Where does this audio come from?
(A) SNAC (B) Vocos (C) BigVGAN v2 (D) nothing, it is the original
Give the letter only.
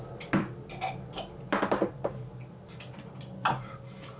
C